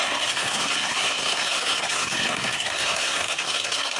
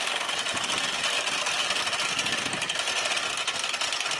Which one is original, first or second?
second